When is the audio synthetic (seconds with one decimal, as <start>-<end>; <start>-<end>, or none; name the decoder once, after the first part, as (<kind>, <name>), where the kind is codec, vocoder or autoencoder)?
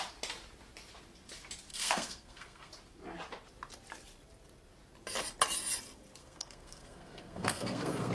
1.7-2.7 (codec, SNAC); 6.2-8.1